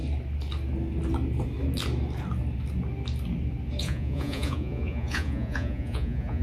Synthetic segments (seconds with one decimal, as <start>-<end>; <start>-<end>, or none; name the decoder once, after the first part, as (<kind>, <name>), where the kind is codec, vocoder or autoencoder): 3.8-6.4 (vocoder, Vocos)